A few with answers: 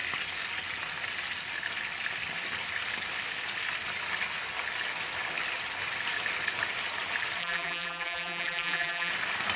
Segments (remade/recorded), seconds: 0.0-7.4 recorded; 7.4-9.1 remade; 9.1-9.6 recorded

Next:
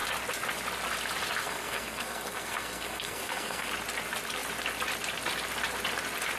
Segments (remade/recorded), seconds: 0.0-1.4 recorded; 1.4-3.7 remade; 3.7-6.4 recorded

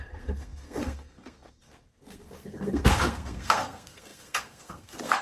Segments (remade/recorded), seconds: 0.0-5.2 remade